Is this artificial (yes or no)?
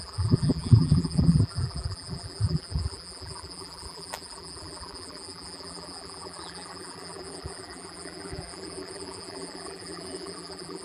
yes